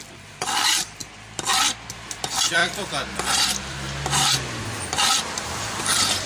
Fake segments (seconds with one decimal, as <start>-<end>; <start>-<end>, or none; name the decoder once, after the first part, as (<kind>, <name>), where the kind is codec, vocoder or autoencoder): 0.0-1.0 (vocoder, BigVGAN v2); 1.9-6.3